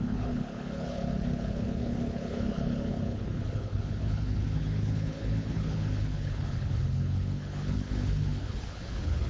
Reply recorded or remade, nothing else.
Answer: remade